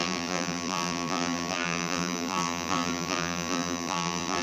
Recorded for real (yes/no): no